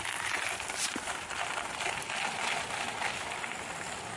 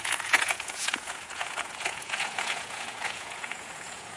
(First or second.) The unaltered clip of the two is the first